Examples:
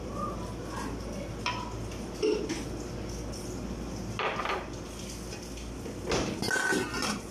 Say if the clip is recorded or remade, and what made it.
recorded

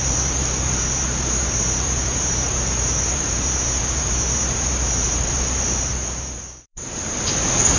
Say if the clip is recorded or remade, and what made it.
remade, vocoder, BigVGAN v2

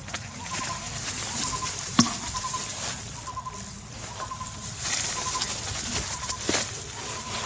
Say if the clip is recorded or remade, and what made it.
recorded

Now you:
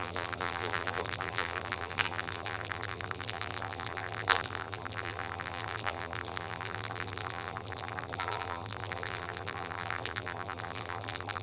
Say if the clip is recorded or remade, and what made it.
remade, vocoder, BigVGAN v2